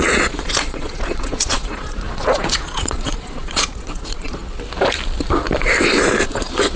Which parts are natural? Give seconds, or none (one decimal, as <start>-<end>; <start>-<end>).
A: 4.4-6.3